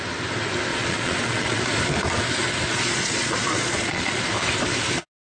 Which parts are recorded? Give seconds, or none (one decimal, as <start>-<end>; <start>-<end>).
0.0-0.7; 1.6-2.7; 4.3-5.2